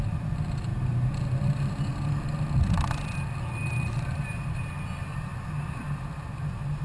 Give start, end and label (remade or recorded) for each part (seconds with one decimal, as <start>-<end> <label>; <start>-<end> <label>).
0.0-0.7 recorded; 0.7-1.8 remade; 1.8-3.6 recorded; 3.6-4.6 remade; 4.6-6.8 recorded